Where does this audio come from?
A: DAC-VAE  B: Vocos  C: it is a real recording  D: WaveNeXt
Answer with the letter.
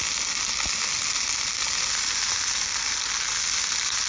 C